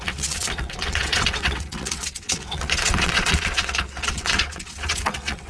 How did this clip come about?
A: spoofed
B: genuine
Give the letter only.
A